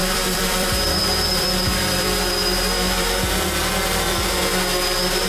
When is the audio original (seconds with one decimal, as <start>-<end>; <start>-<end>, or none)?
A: 3.2-5.3